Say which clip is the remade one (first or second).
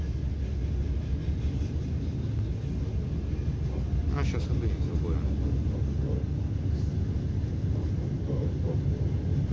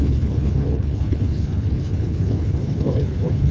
second